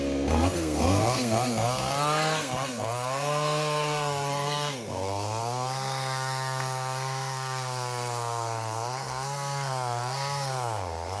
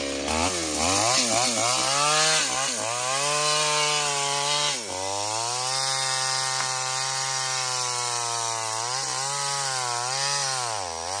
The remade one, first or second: first